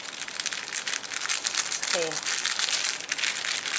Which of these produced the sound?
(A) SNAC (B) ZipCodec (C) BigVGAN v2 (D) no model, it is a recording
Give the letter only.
D